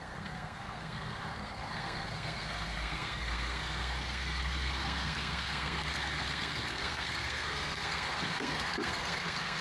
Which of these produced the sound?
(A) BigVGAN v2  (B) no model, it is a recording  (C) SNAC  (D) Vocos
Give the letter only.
C